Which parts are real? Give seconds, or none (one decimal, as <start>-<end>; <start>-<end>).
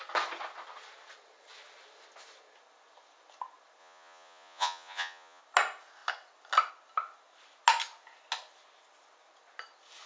0.0-3.8; 5.4-10.1